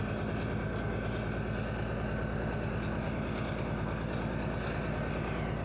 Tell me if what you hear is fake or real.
real